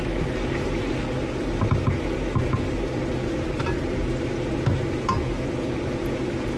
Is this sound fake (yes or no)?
no